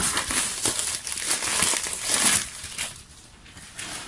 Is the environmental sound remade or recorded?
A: recorded